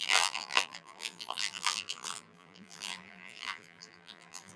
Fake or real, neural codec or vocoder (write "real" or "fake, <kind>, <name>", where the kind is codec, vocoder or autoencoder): fake, vocoder, BigVGAN v2